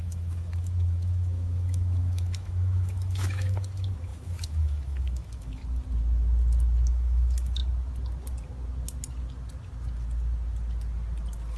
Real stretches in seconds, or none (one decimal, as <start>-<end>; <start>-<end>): 5.6-6.9; 7.6-11.6